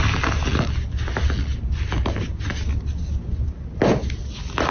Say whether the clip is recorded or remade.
recorded